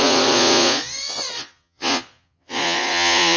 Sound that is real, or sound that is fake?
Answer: fake